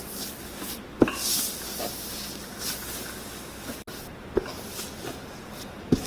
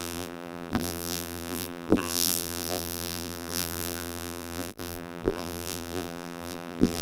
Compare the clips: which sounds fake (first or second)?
second